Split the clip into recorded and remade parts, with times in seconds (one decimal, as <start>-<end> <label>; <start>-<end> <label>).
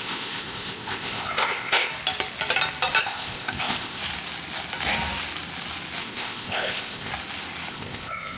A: 0.0-1.9 remade; 1.9-3.0 recorded; 3.0-4.0 remade; 4.0-6.0 recorded; 6.0-7.1 remade; 7.1-7.7 recorded; 7.7-8.4 remade